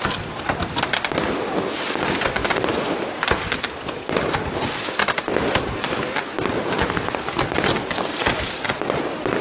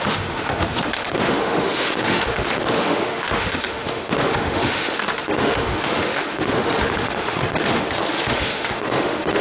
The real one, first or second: first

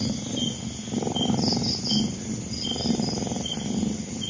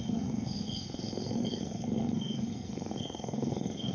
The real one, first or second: first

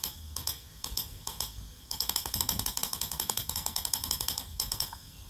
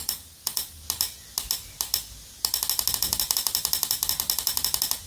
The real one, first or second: second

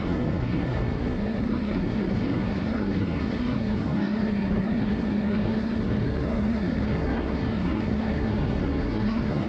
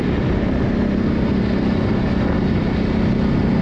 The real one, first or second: second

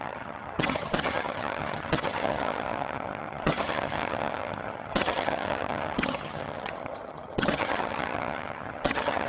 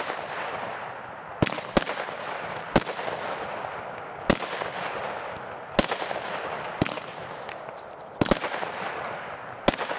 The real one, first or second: second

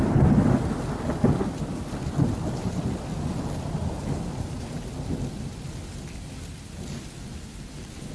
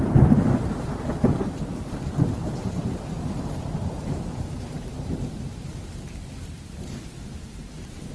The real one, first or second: first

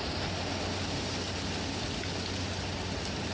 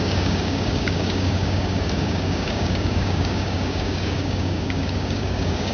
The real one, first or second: first